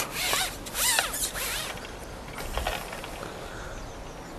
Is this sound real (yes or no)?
yes